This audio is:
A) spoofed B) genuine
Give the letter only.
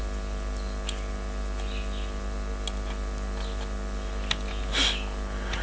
B